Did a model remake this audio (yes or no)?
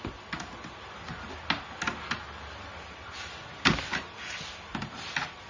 no